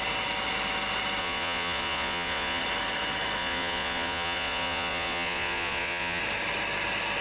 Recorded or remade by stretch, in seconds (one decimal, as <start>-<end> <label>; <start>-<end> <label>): 0.0-1.2 recorded; 1.2-2.6 remade; 2.6-3.4 recorded; 3.4-6.2 remade; 6.2-7.2 recorded